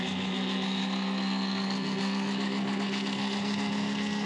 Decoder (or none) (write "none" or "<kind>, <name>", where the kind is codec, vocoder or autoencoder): codec, SNAC